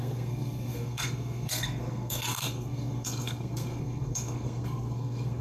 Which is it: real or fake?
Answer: fake